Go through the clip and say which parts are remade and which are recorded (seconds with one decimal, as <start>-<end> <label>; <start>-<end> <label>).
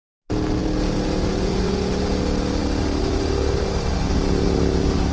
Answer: 0.0-0.6 recorded; 0.6-1.7 remade; 1.7-2.6 recorded; 2.6-5.1 remade